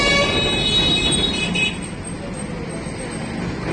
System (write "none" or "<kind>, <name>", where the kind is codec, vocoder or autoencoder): none